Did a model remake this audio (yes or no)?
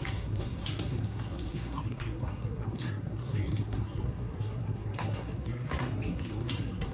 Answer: yes